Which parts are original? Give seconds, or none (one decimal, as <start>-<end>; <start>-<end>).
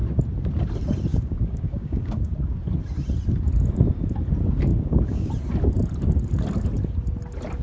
0.0-1.1; 2.3-4.7; 5.3-7.6